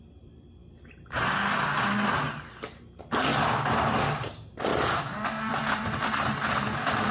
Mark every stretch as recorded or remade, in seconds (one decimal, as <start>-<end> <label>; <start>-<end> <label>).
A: 0.0-0.6 remade; 0.6-2.8 recorded; 2.8-3.3 remade; 3.3-4.3 recorded; 4.3-4.7 remade; 4.7-5.5 recorded; 5.5-7.1 remade